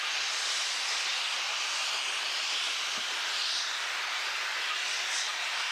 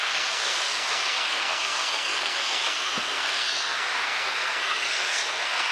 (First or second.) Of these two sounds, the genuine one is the first